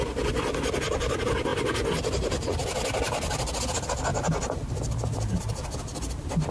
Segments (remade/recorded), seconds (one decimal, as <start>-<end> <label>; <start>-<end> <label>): 0.0-4.1 recorded; 4.1-5.4 remade; 5.4-6.5 recorded